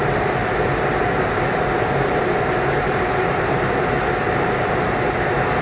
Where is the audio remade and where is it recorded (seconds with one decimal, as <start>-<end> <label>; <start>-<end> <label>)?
0.0-0.4 recorded; 0.4-3.8 remade; 3.8-5.6 recorded